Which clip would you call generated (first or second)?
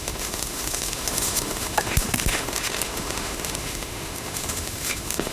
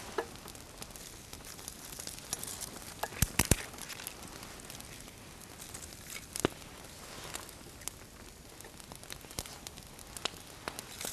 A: first